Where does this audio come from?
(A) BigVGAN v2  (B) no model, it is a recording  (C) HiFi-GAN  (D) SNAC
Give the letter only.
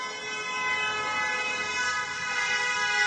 B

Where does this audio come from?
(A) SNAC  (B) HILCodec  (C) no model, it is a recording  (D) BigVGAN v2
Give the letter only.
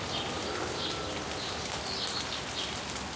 C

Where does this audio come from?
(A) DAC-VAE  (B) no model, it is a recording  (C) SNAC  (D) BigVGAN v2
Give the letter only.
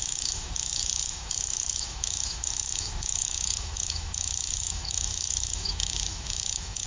A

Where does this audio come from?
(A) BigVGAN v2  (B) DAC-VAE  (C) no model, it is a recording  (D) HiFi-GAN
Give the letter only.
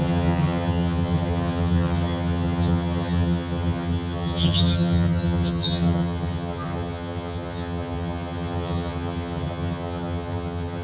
D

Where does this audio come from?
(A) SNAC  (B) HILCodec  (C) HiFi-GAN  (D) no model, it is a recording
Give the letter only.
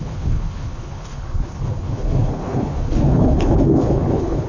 B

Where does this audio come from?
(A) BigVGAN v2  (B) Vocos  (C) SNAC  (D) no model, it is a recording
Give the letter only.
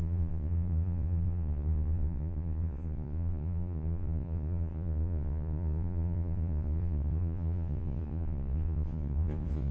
B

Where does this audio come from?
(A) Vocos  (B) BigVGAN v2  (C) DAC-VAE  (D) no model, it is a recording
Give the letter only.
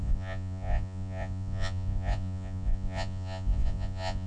A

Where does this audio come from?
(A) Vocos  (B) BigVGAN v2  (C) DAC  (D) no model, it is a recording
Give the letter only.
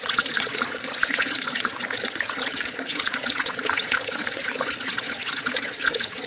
A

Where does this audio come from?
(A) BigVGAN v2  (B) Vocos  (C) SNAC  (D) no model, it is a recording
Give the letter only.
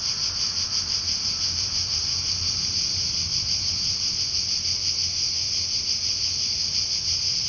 D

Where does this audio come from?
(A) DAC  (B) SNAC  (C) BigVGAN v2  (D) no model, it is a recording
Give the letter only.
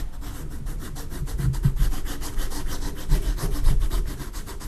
D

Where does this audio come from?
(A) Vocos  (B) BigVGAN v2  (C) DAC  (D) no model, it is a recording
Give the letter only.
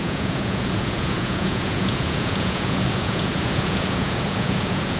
A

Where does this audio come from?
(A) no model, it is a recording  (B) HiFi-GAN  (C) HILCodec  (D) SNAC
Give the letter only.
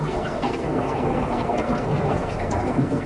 D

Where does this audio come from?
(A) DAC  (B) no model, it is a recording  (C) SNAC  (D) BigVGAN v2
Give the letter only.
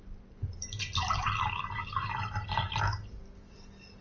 B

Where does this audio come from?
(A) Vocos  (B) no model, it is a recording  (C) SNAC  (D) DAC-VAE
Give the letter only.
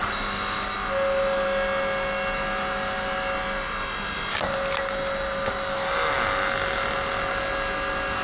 B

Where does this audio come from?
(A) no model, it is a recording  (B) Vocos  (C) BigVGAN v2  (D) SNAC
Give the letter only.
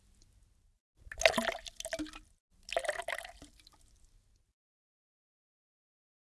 A